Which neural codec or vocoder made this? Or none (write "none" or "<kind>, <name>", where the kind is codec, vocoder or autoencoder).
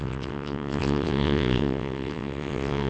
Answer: vocoder, WaveNeXt